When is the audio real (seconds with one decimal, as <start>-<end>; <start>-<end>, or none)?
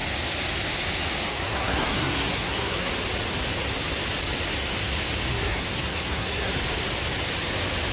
0.0-1.3; 2.9-5.3; 6.5-7.9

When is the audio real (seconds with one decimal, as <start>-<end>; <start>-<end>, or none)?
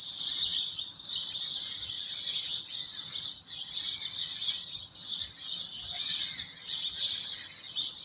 0.0-8.0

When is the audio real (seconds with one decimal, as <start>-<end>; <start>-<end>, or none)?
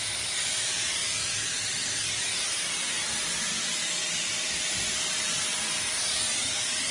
0.0-6.9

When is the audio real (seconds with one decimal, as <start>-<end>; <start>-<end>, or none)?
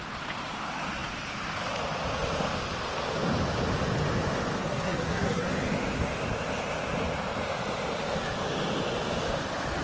0.0-4.6; 5.5-9.8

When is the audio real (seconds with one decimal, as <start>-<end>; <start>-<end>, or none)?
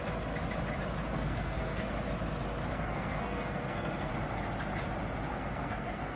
0.0-1.1; 1.9-2.7; 4.1-5.3